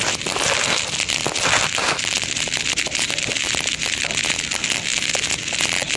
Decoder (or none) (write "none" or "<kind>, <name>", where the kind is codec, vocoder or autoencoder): none